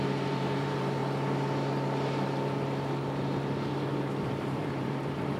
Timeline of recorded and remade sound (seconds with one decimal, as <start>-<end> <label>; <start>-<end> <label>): 0.0-1.0 remade; 1.0-4.2 recorded; 4.2-5.4 remade